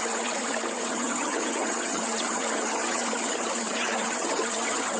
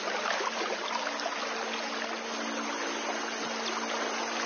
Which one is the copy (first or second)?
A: first